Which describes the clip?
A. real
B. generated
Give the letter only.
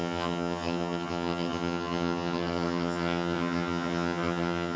B